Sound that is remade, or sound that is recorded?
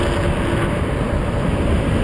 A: recorded